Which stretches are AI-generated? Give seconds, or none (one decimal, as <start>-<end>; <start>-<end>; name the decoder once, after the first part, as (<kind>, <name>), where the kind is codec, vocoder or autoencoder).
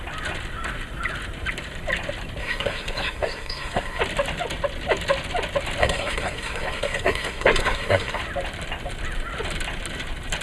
2.4-4.0 (codec, SNAC); 5.8-8.2